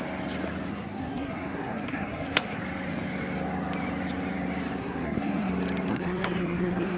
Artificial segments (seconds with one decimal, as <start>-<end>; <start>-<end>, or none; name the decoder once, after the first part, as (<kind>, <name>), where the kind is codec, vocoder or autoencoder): 0.7-2.6 (codec, SNAC); 4.8-5.5; 5.9-7.0